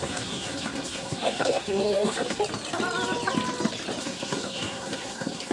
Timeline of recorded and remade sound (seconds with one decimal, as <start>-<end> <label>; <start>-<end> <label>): 0.0-2.4 remade; 2.4-4.0 recorded; 4.0-5.5 remade